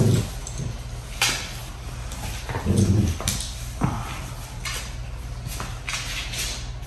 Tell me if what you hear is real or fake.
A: real